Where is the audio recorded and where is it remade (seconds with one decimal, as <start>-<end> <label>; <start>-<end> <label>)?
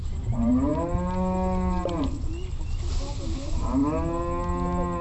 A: 0.0-0.7 remade; 0.7-3.1 recorded; 3.1-3.8 remade; 3.8-5.0 recorded